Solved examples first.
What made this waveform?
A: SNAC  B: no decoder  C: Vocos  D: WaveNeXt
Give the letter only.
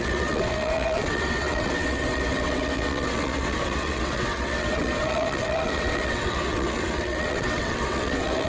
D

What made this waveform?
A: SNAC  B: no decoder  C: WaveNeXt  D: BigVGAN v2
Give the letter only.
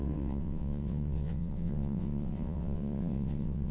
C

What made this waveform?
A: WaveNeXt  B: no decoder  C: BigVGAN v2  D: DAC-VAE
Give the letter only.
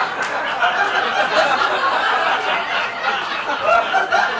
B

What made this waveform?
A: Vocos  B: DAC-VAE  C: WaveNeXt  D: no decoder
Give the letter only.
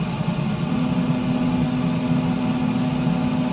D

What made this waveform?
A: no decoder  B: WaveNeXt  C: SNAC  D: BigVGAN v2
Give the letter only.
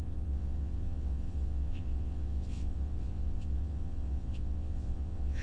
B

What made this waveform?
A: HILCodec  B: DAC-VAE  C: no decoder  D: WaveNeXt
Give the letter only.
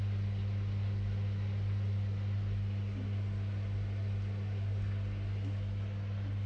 C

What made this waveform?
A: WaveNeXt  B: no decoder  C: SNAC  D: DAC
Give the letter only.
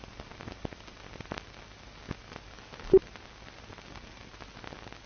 B